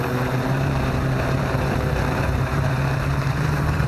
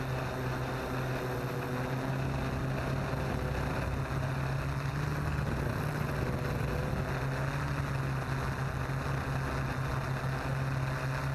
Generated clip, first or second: first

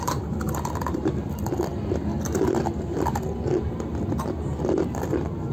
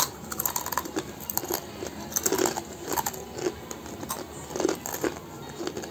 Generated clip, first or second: first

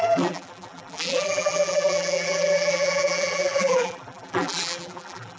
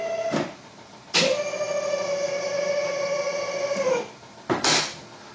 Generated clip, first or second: first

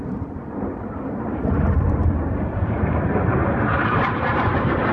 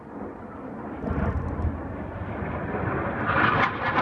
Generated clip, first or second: first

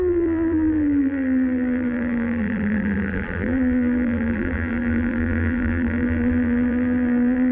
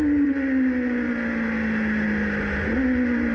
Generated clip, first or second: first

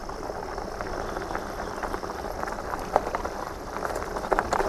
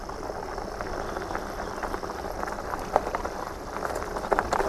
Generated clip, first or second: first